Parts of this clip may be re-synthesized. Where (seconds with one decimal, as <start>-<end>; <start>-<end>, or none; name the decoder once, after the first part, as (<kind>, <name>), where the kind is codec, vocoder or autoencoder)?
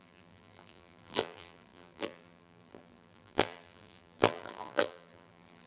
0.0-5.7 (vocoder, BigVGAN v2)